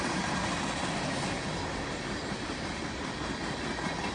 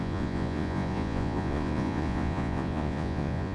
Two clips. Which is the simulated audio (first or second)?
second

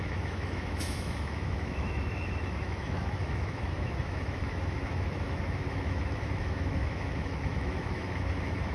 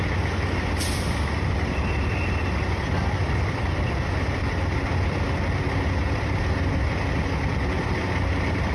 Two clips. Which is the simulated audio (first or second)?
first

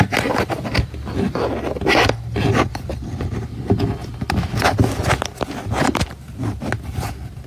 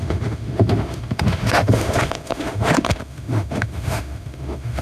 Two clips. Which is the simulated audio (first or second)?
second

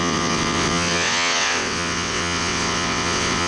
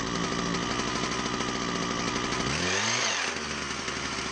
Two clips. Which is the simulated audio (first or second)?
first